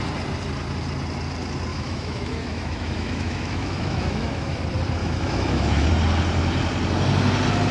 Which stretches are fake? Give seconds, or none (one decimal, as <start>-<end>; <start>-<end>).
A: 1.7-4.6; 5.0-5.9

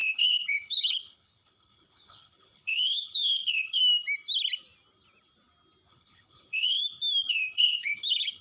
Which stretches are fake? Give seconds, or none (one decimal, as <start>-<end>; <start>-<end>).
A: 0.0-3.8; 5.9-6.8; 7.3-8.4

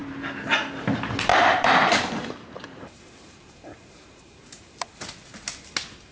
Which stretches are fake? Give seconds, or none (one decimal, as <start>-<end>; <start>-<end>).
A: 1.3-5.0

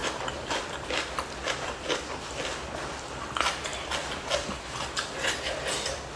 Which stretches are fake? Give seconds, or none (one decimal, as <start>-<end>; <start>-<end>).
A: none

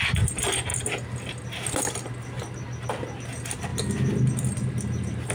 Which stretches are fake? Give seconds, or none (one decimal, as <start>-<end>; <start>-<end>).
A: none